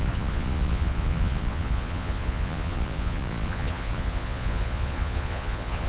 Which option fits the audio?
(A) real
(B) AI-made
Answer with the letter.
B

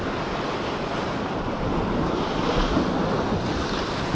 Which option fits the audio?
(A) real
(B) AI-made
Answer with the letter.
A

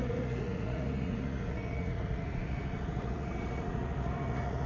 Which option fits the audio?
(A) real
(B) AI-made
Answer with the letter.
B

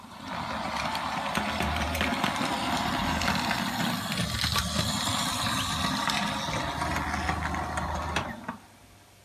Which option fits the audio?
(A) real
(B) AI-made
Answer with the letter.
A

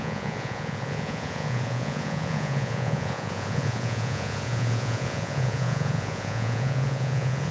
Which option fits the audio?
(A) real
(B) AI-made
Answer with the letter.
B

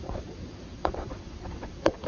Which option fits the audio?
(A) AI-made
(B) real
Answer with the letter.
A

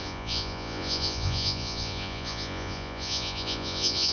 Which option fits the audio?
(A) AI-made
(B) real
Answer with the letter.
A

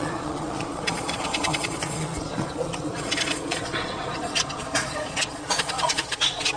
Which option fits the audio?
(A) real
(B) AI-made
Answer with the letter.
B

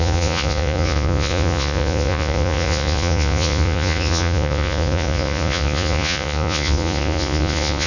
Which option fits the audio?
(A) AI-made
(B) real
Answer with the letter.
A